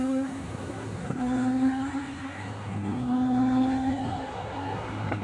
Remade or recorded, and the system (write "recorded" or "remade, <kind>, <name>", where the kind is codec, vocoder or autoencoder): remade, codec, SNAC